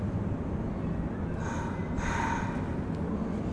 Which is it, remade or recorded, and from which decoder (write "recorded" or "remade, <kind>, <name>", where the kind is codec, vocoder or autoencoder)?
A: recorded